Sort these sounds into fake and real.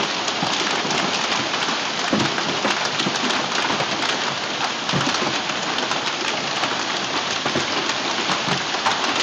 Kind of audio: real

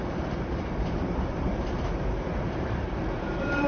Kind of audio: fake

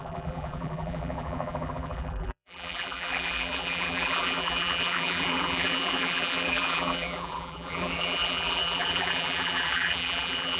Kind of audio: fake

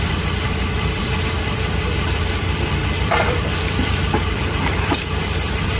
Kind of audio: fake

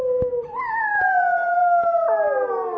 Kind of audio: real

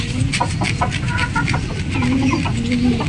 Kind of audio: real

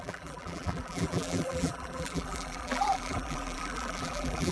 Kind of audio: fake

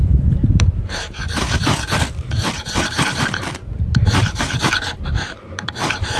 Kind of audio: fake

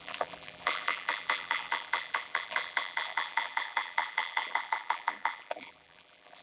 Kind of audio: fake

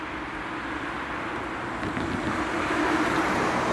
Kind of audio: real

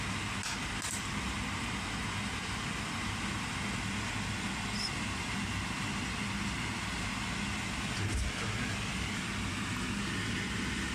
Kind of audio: real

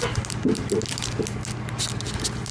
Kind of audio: real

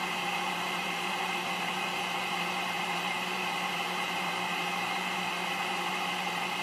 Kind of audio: fake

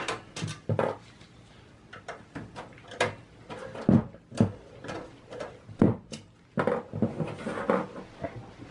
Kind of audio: real